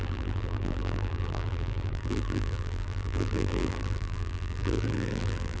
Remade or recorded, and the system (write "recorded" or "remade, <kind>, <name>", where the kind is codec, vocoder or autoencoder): remade, vocoder, BigVGAN v2